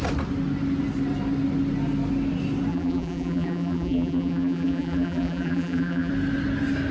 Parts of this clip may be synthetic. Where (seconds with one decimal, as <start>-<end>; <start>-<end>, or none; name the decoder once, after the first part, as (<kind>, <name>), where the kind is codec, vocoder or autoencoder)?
2.7-6.1 (vocoder, BigVGAN v2)